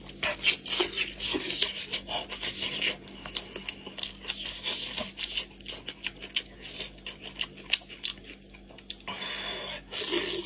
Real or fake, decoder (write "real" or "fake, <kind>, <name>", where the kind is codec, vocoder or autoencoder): real